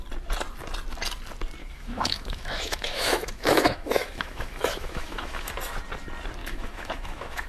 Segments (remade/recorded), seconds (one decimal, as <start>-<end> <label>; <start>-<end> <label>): 0.0-1.6 recorded; 1.6-5.5 remade; 5.5-6.4 recorded; 6.4-7.5 remade